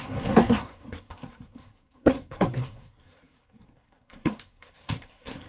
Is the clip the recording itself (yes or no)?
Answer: no